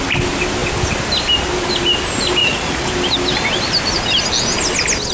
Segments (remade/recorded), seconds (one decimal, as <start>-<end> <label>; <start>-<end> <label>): 0.0-2.4 recorded; 2.4-2.9 remade; 2.9-5.1 recorded